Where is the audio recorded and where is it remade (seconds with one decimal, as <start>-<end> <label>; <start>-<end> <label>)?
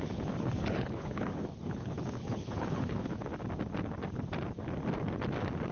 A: 0.0-3.3 remade; 3.3-5.7 recorded